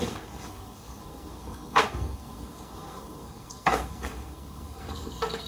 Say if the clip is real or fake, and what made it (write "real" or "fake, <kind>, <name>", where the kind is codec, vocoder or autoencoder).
fake, codec, SNAC